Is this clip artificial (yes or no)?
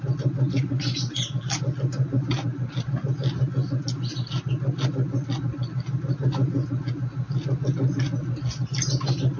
no